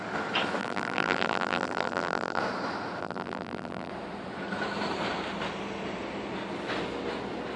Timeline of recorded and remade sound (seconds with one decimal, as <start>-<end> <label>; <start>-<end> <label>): 0.0-0.6 recorded; 0.6-2.4 remade; 2.4-3.0 recorded; 3.0-3.9 remade; 3.9-7.6 recorded